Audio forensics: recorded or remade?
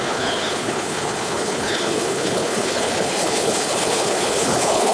remade